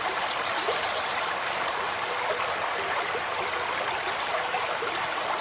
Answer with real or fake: real